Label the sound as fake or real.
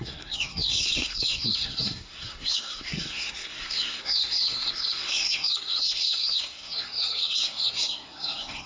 fake